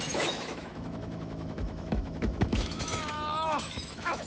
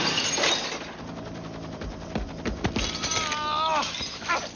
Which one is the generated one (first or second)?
first